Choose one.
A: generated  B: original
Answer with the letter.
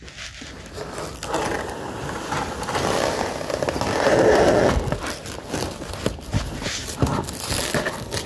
B